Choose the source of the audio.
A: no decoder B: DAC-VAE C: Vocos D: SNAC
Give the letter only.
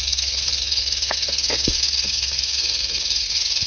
D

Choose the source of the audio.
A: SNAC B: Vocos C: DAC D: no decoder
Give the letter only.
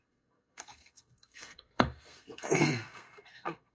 A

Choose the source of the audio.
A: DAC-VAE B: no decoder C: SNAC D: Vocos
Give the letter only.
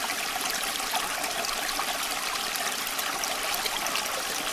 B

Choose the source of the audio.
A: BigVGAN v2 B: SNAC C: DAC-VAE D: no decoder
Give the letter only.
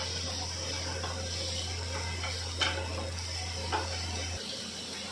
D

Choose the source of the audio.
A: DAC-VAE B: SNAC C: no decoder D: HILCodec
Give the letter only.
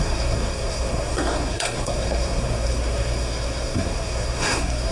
B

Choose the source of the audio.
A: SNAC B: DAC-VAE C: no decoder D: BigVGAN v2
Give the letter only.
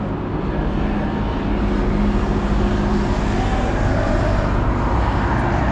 C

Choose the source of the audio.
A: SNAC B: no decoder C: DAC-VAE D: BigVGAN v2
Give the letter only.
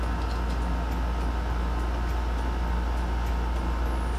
B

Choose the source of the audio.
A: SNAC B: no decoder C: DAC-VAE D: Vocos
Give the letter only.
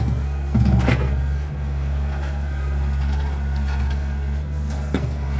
A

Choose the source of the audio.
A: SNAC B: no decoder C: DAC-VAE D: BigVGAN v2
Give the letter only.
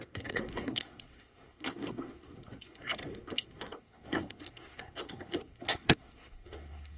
A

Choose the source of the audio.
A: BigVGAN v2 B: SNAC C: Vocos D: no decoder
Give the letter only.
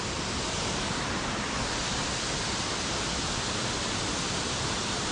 D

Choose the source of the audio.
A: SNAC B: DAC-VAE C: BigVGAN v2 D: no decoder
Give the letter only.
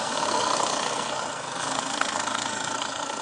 A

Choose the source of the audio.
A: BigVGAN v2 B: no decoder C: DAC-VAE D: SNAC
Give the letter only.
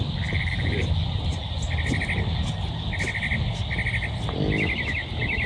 B